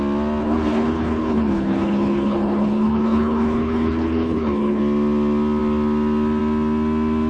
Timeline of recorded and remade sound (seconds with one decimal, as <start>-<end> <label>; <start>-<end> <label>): 0.0-0.4 recorded; 0.4-4.8 remade; 4.8-7.3 recorded